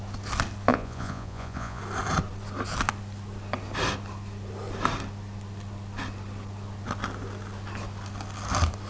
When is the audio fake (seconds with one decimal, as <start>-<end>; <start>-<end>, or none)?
0.7-1.8